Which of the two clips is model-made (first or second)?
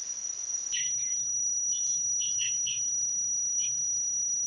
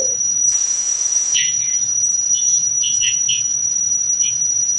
second